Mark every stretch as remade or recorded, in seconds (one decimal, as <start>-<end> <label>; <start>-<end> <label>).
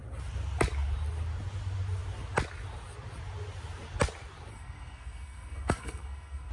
0.0-4.5 recorded; 4.5-6.5 remade